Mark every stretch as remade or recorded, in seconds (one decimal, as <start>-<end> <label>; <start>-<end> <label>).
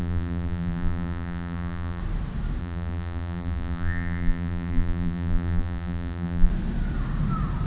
0.0-2.0 remade; 2.0-2.6 recorded; 2.6-6.5 remade; 6.5-7.7 recorded